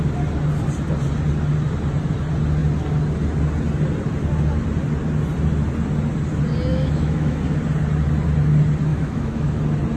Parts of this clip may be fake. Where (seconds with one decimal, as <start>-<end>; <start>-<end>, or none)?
6.7-7.4; 8.9-9.6